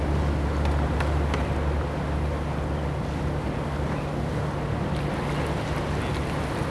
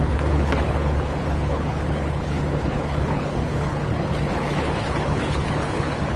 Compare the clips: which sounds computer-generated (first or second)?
second